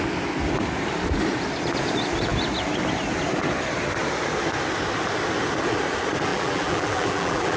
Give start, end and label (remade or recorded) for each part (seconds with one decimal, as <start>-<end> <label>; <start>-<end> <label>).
0.0-6.3 recorded; 6.3-7.6 remade